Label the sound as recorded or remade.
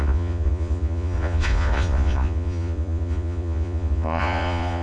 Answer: remade